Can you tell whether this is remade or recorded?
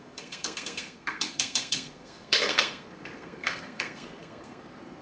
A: remade